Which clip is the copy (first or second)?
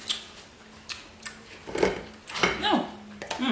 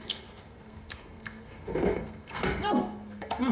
second